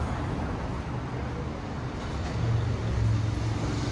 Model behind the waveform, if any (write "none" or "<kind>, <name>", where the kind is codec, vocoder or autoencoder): none